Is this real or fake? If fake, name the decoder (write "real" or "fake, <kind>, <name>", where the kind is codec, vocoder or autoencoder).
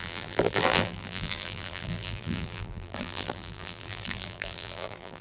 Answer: fake, vocoder, BigVGAN v2